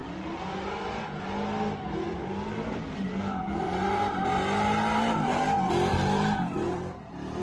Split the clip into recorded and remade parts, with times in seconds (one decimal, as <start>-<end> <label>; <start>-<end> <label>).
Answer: 0.0-4.9 recorded; 4.9-5.4 remade; 5.4-5.9 recorded; 5.9-7.0 remade; 7.0-7.4 recorded